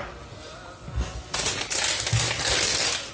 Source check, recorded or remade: recorded